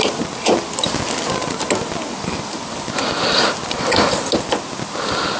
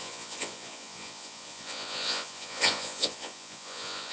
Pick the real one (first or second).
first